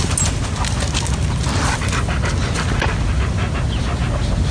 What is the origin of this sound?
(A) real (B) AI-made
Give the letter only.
A